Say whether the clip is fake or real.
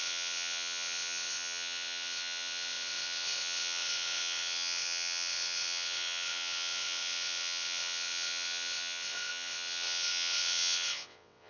fake